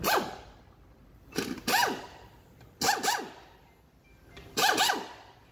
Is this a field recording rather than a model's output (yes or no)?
yes